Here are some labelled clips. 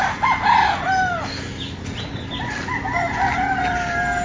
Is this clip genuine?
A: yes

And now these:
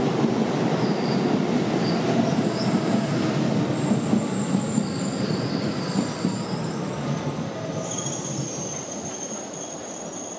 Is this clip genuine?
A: yes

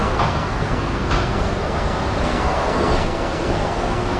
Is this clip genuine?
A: no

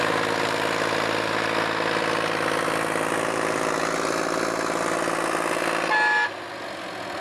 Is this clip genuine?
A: yes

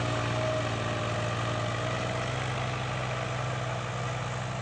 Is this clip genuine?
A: yes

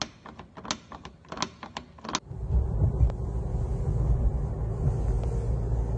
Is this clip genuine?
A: yes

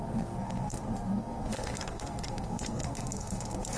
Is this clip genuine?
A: no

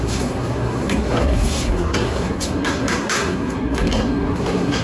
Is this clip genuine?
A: no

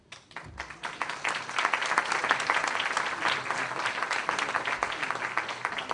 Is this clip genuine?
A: yes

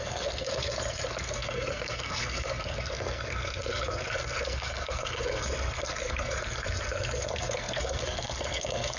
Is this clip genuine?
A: no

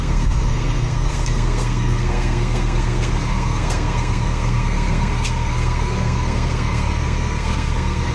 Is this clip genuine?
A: no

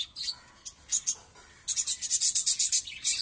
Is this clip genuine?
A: yes